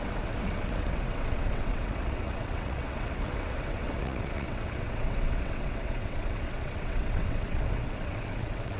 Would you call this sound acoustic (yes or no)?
no